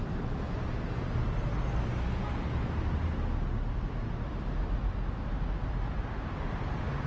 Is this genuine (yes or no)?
yes